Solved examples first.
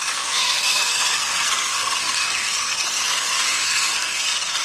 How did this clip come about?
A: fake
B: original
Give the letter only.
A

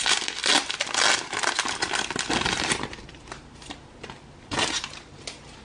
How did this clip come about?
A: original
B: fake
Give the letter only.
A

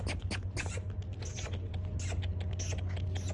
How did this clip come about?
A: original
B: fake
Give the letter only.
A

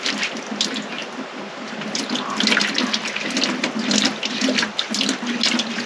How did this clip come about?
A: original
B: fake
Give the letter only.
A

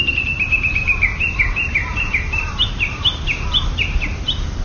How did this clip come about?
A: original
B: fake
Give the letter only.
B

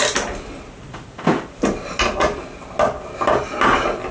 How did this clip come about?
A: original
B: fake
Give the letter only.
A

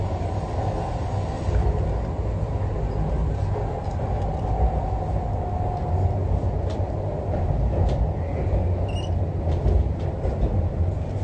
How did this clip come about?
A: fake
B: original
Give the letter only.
B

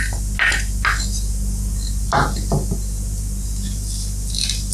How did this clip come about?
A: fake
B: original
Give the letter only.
B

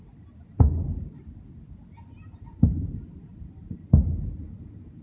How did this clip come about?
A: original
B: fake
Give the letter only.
A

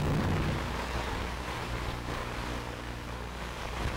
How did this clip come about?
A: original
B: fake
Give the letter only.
B